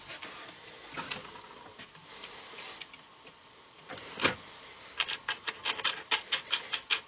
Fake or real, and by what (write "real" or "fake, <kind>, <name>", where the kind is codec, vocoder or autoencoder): real